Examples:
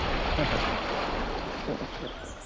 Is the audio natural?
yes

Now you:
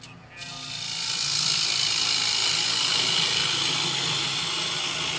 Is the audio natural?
yes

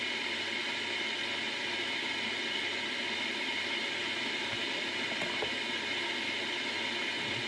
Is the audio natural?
yes